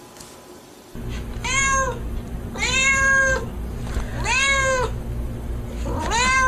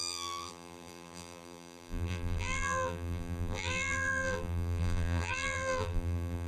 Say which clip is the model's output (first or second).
second